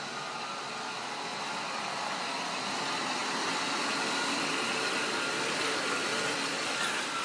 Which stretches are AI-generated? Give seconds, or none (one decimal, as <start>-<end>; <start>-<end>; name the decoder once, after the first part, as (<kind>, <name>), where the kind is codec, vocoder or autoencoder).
none